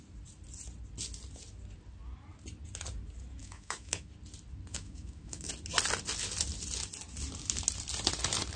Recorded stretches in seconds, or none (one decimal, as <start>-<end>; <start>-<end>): 0.0-3.4; 4.1-4.7; 5.5-8.6